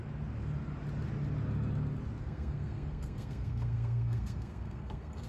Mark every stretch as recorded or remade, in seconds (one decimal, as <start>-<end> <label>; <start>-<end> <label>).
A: 0.0-2.2 recorded; 2.2-5.3 remade